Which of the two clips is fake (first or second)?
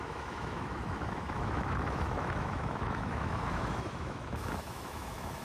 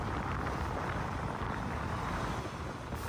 first